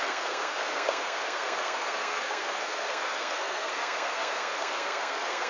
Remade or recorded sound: remade